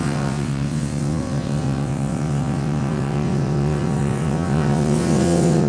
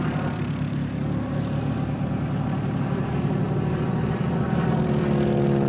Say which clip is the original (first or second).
second